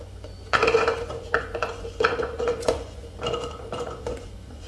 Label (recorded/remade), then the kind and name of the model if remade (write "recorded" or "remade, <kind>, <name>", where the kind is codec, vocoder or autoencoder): remade, vocoder, Vocos